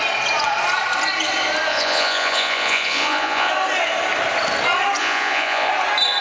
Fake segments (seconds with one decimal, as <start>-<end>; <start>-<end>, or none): 1.7-3.5; 5.0-5.7